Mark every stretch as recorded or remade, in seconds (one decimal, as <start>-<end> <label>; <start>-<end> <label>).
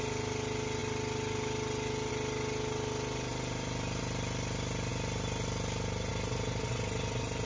0.0-3.3 recorded; 3.3-4.0 remade; 4.0-7.5 recorded